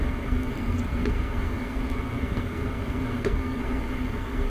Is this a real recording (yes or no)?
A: no